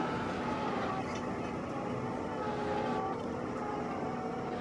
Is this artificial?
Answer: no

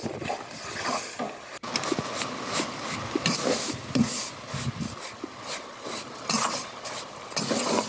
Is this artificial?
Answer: no